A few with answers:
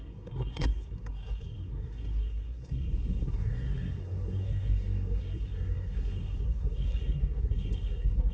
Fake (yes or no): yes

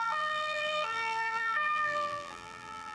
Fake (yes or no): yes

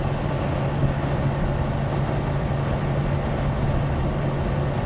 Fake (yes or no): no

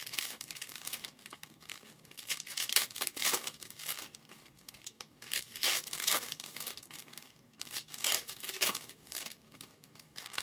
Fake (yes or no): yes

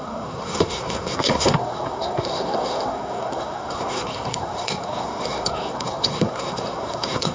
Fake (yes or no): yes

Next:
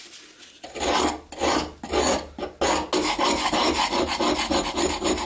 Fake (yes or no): no